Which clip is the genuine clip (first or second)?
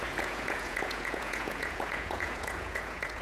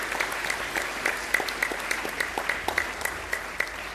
second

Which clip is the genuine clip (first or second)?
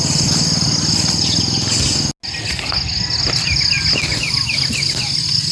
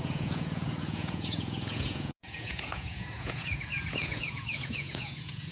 first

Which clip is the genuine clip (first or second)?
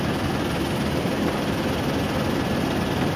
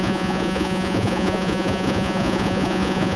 first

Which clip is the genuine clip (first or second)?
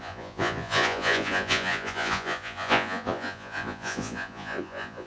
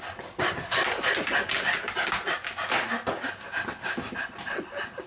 second